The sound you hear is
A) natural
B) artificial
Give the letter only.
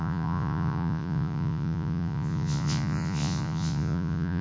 B